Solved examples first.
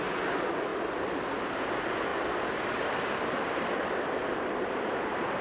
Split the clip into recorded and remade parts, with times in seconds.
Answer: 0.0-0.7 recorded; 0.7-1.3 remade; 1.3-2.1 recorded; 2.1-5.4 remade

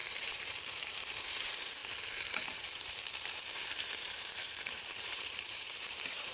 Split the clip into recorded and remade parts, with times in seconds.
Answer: 0.0-1.8 remade; 1.8-2.3 recorded; 2.3-6.3 remade

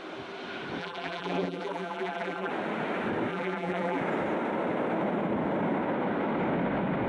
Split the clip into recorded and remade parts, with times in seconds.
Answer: 0.0-0.8 recorded; 0.8-2.5 remade; 2.5-3.3 recorded; 3.3-4.0 remade; 4.0-7.1 recorded